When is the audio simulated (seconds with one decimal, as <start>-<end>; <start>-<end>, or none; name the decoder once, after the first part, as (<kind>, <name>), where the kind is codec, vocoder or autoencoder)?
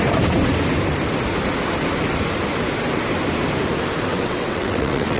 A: 4.1-5.2 (vocoder, WaveNeXt)